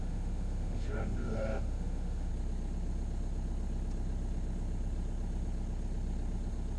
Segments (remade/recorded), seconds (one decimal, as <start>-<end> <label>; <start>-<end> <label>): 0.0-2.3 remade; 2.3-6.8 recorded